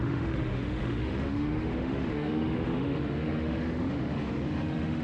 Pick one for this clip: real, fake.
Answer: fake